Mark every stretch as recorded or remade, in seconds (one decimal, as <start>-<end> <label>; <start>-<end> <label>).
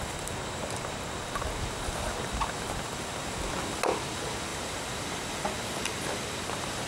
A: 0.0-4.5 recorded; 4.5-6.4 remade; 6.4-6.9 recorded